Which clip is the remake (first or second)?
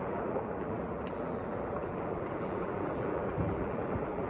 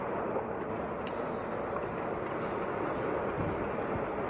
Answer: first